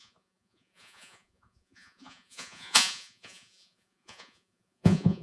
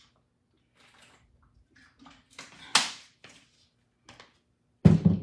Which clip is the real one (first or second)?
second